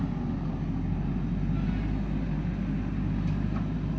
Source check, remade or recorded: recorded